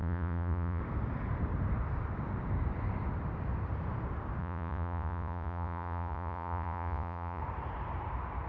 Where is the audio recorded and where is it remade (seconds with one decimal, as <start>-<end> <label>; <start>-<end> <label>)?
0.0-0.8 remade; 0.8-4.4 recorded; 4.4-7.4 remade; 7.4-8.5 recorded